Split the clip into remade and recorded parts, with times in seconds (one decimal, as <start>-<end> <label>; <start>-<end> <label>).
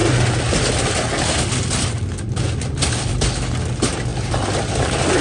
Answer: 0.0-5.2 recorded